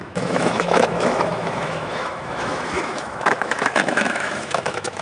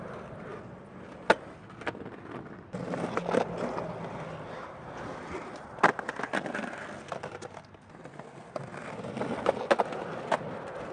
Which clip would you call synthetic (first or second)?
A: first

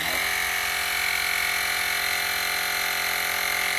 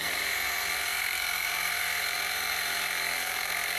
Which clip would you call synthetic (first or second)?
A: second